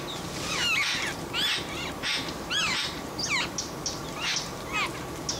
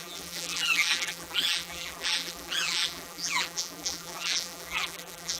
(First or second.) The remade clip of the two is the second